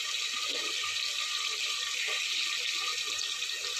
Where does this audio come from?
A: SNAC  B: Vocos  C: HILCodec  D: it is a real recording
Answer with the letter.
D